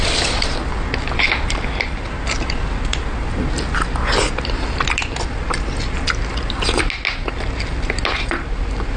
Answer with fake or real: real